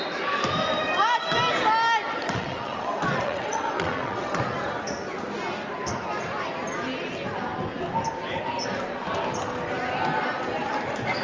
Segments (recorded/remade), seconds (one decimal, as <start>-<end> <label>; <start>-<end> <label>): 0.0-2.2 recorded; 2.2-4.4 remade; 4.4-11.2 recorded